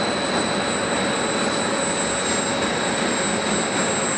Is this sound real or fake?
real